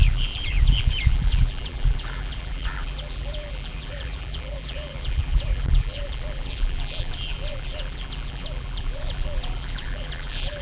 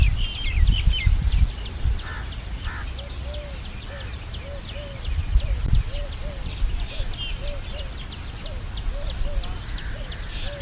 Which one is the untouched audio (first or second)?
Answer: second